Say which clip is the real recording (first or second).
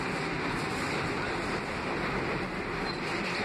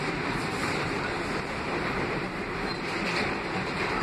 first